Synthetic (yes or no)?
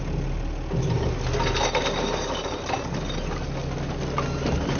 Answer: no